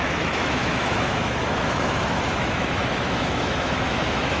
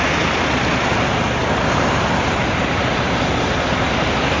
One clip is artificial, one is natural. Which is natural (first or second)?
second